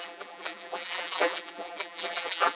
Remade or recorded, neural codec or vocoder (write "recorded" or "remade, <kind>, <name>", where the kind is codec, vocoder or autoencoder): remade, vocoder, BigVGAN v2